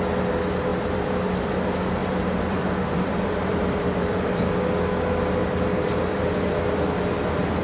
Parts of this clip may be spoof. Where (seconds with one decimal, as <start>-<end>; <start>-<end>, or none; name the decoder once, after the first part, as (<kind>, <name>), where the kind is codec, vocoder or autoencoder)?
0.7-1.2 (vocoder, BigVGAN v2); 2.0-4.5; 5.4-6.2